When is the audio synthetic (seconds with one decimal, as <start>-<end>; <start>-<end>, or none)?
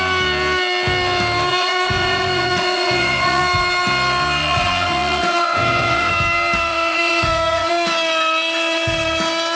1.5-3.4; 4.4-6.1; 6.7-7.7